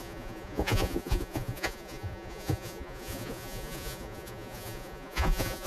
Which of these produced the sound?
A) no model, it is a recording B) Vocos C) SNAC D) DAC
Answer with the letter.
B